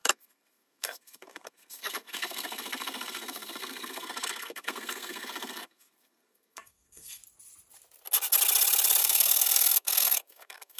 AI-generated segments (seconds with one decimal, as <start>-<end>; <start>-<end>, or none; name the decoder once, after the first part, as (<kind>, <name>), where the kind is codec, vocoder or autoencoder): 0.0-7.2 (codec, SNAC); 9.0-10.8